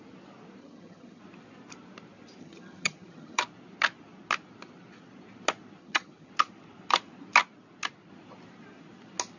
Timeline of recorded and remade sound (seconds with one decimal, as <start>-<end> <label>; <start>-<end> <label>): 0.0-0.6 recorded; 0.6-1.2 remade; 1.2-2.4 recorded; 2.4-3.4 remade; 3.4-5.8 recorded; 5.8-6.3 remade; 6.3-9.4 recorded